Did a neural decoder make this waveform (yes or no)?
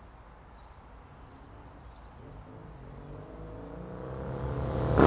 no